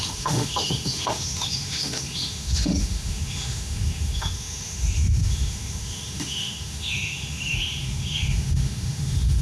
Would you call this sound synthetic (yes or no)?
yes